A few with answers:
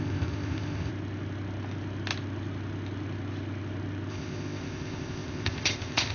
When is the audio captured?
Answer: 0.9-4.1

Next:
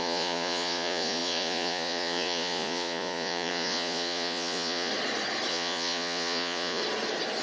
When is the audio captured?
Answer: 4.9-5.5; 6.8-7.4

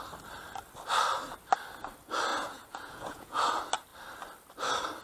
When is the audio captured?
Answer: 0.0-2.3; 3.5-5.0

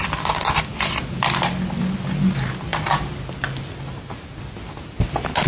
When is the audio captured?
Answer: 0.0-0.7; 1.8-5.5

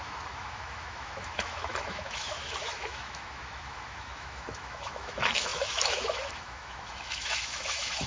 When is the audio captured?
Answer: none

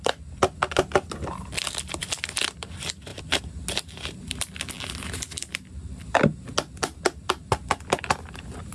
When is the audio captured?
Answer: 0.0-8.7

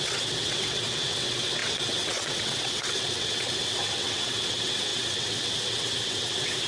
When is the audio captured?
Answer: none

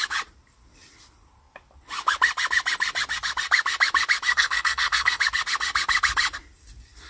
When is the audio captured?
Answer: 0.0-4.3; 5.2-7.1